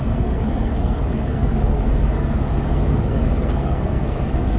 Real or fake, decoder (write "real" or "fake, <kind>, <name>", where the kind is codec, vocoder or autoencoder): fake, codec, SNAC